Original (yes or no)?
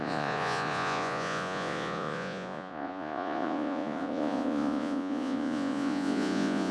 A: no